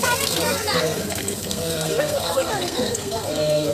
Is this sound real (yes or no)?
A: no